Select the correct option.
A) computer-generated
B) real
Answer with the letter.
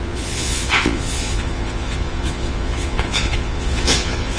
A